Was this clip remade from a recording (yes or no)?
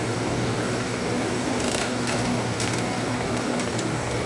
yes